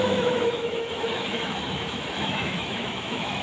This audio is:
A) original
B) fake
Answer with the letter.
B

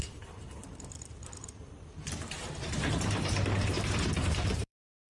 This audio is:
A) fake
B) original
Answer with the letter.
A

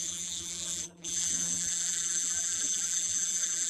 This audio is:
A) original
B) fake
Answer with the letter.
B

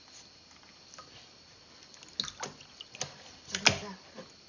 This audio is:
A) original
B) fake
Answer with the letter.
A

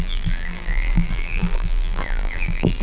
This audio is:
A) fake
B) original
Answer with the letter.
A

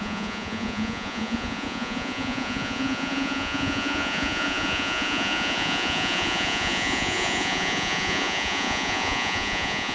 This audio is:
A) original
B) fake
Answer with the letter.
B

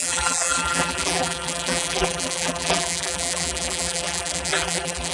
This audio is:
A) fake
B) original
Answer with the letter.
A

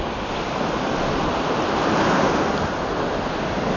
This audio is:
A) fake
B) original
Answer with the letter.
B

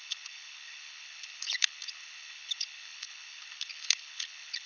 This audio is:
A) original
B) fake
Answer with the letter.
B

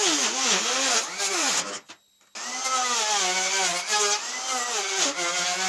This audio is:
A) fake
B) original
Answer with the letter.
B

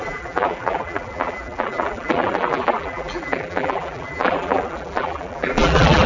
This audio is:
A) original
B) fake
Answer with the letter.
B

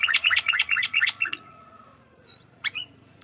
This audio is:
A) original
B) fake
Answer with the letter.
B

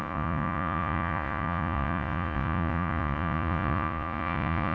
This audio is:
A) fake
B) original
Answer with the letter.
A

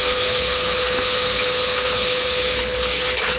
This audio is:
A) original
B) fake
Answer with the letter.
B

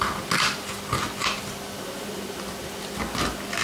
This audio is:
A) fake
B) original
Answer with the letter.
B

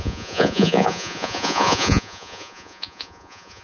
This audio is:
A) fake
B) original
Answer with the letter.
A